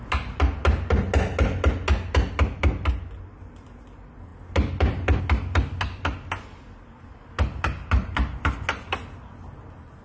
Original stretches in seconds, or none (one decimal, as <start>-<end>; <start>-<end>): 0.0-10.0